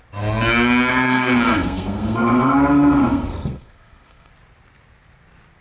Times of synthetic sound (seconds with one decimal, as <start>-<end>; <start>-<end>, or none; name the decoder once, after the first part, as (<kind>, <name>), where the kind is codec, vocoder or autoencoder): 0.9-4.3 (codec, SNAC)